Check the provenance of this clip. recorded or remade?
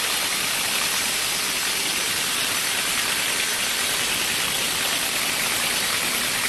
recorded